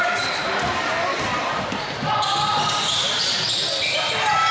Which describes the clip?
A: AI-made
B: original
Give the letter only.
B